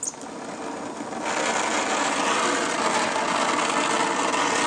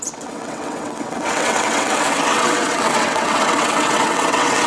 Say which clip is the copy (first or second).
second